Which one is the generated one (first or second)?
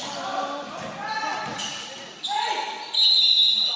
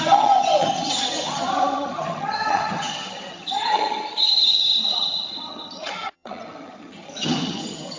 second